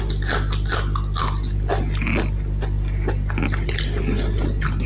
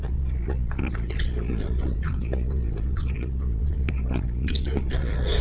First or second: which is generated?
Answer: second